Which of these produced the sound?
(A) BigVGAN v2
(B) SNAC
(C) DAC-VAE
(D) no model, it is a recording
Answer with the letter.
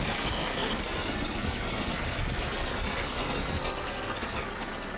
B